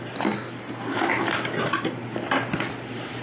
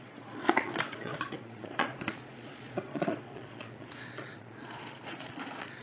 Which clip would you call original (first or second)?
first